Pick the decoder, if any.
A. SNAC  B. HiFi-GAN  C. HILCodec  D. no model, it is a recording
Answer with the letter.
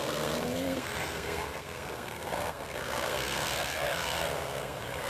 A